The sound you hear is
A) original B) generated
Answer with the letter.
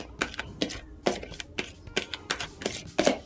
A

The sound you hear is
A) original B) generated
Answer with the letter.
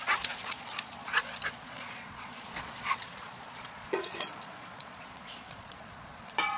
B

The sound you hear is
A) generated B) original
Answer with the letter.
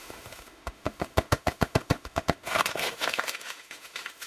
A